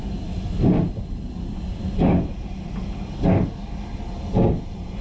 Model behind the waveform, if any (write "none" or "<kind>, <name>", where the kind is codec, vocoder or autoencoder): none